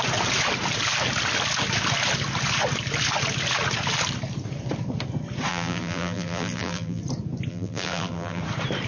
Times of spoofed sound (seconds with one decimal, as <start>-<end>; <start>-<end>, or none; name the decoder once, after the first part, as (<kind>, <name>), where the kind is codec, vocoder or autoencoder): 5.5-7.0 (vocoder, BigVGAN v2); 7.5-8.4